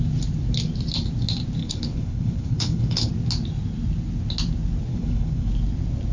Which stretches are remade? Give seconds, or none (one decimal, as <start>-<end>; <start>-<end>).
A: 1.6-3.1; 4.9-5.5